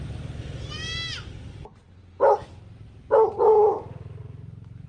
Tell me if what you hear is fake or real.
real